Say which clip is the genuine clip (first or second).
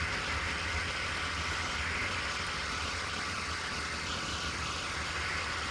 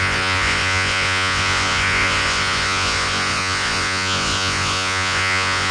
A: first